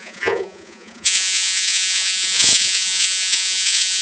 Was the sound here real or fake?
fake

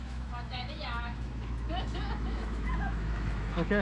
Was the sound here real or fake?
fake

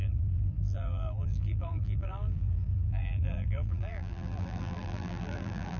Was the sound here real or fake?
fake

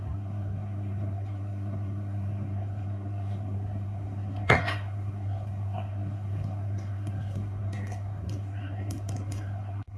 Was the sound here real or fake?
fake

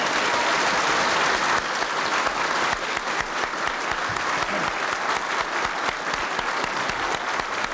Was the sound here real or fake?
real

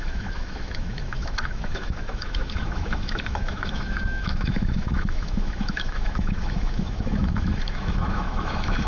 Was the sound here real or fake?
fake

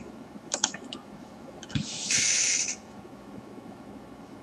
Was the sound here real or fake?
fake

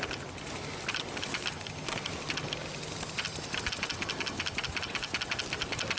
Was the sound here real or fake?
real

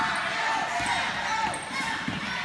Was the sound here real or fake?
real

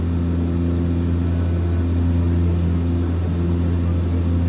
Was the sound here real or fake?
real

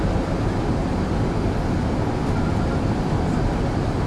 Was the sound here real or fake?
real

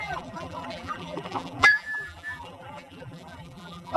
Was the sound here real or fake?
fake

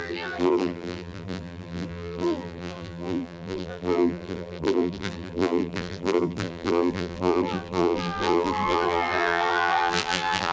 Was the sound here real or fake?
fake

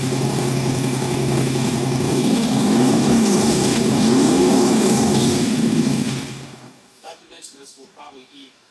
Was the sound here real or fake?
fake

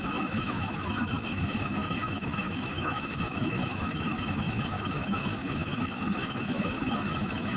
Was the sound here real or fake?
fake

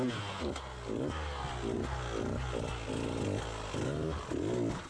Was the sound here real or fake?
real